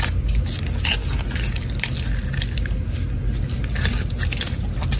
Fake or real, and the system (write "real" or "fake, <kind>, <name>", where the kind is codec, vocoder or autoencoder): real